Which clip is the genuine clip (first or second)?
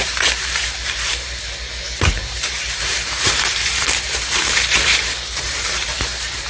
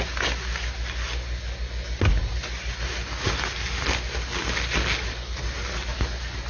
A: second